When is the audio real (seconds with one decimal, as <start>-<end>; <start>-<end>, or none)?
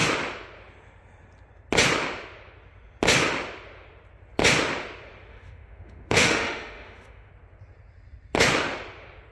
0.0-5.3; 7.3-9.3